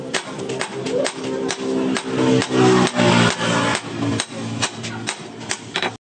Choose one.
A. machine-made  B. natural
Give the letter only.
B